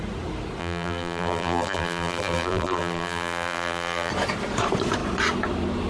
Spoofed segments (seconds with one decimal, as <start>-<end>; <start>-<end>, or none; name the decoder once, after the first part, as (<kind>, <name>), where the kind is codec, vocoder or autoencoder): 0.6-4.1 (vocoder, BigVGAN v2)